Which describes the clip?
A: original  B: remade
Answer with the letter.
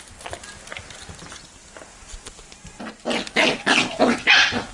A